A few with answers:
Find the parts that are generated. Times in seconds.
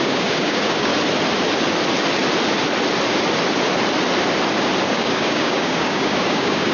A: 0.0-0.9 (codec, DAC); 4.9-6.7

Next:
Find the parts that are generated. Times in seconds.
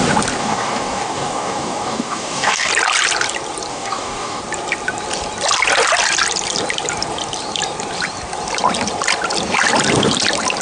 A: 0.4-2.7 (codec, DAC); 3.7-4.4